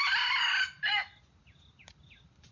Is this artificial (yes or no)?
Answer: no